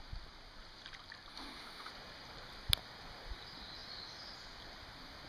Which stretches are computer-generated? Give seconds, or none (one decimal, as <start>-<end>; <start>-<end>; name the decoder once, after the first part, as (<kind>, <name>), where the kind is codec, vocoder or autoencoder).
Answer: 1.3-1.9 (autoencoder, DAC-VAE)